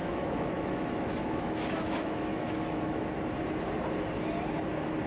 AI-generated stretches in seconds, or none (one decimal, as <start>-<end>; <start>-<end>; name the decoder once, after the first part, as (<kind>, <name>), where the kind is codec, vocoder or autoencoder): 0.0-3.1 (autoencoder, DAC-VAE)